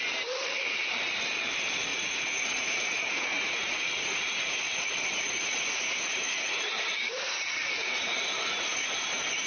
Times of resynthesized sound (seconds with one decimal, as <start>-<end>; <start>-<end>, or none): 1.9-6.6; 7.8-9.0

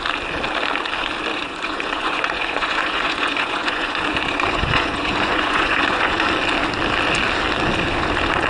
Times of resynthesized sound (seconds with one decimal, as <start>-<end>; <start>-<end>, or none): 1.3-6.3

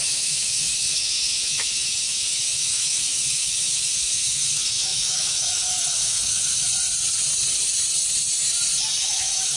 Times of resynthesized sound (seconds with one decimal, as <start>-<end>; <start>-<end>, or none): 0.0-6.7; 9.0-9.6